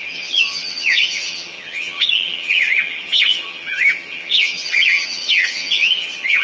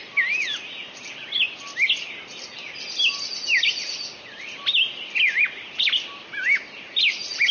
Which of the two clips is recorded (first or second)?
second